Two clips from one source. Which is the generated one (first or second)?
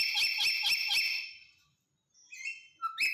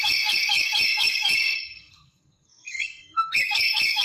second